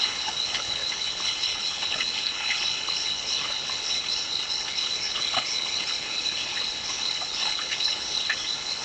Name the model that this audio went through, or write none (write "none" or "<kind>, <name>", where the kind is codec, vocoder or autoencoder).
codec, HILCodec